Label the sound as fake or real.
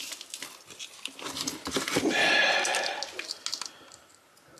real